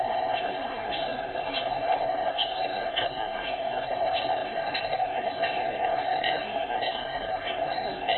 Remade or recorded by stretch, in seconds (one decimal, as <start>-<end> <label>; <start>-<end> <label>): 0.0-8.2 remade